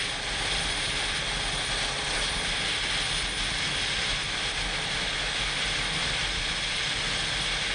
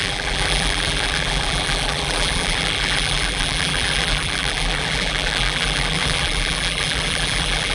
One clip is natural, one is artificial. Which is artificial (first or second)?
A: second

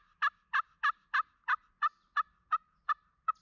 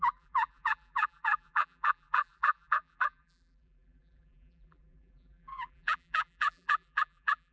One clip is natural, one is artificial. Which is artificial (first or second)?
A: second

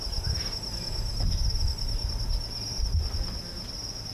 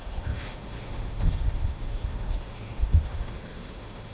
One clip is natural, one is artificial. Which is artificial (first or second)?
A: second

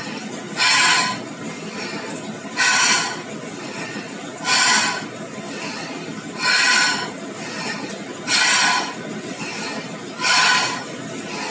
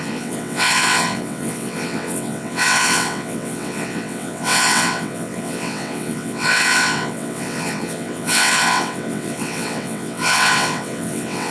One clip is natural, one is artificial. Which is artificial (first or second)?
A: second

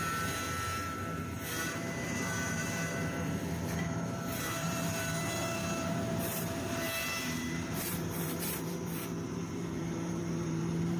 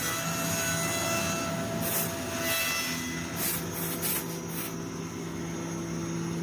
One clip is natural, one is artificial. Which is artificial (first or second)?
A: first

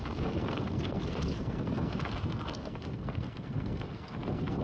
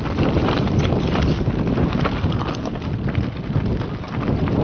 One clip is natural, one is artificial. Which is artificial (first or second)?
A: first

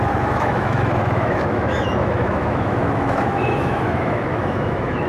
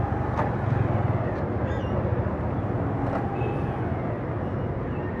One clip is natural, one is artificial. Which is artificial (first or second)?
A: first